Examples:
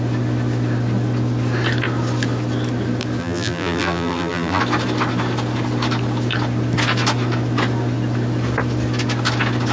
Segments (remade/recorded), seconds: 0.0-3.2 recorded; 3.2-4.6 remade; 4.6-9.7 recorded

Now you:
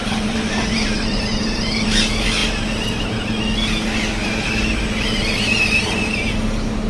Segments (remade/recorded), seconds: 0.0-2.0 remade; 2.0-6.9 recorded